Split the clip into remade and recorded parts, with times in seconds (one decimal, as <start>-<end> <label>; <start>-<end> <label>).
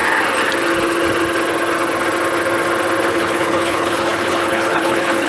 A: 0.0-3.1 recorded; 3.1-5.3 remade